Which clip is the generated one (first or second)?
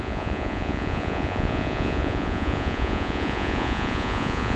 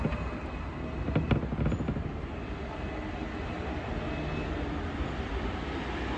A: first